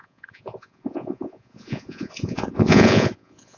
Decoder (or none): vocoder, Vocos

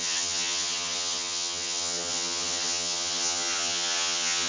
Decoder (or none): vocoder, HiFi-GAN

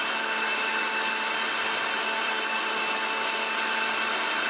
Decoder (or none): none